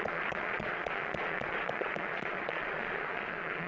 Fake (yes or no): yes